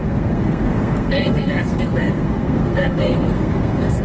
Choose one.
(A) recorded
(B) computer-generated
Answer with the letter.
B